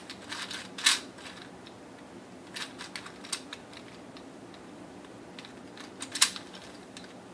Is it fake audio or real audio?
real